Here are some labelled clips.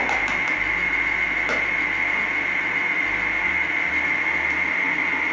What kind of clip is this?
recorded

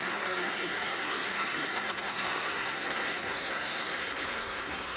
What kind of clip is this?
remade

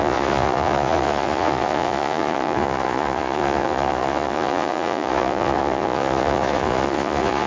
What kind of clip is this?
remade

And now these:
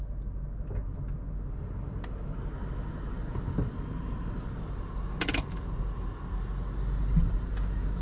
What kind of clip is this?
recorded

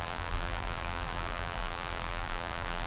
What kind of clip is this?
remade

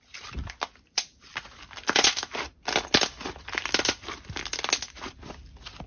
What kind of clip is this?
recorded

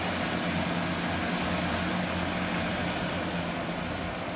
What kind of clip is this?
recorded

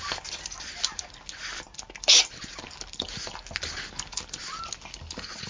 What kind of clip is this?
recorded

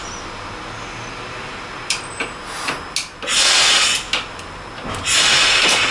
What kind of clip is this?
recorded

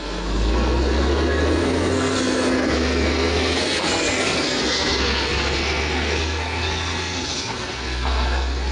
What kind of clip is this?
remade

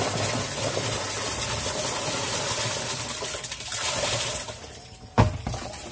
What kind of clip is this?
recorded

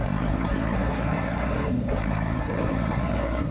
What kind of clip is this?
remade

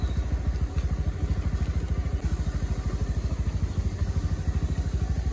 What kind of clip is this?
recorded